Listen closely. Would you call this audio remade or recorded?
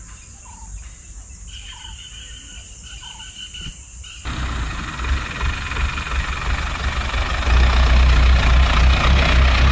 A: recorded